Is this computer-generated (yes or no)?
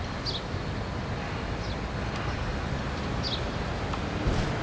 no